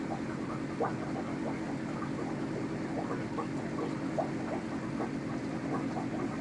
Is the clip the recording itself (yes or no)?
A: yes